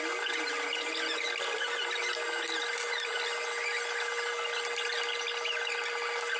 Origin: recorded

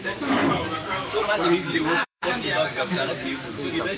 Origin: remade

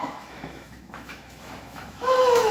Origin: remade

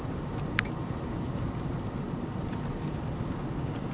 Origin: recorded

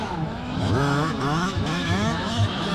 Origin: remade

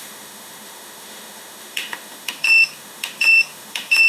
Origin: remade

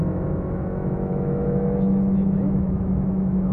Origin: remade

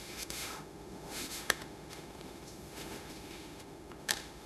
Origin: remade